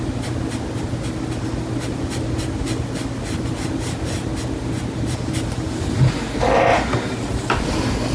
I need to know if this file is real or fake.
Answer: real